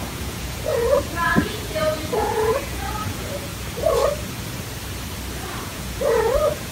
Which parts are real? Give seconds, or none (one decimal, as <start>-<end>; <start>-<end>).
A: 3.5-5.6